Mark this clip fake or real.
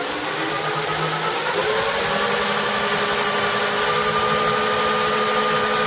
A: real